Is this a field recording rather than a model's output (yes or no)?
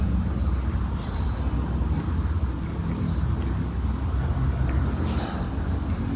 yes